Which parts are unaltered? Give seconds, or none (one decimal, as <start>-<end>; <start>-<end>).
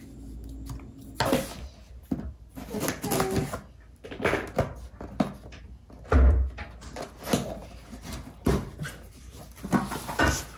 0.0-7.6; 9.4-10.6